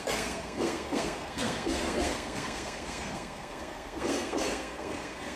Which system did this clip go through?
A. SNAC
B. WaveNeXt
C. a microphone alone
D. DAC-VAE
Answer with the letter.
A